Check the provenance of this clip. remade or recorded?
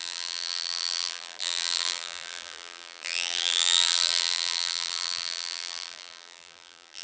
remade